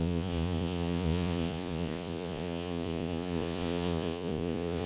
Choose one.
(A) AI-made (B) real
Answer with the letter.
A